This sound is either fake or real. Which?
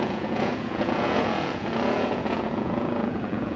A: fake